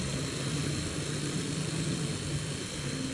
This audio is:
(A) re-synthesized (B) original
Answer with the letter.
B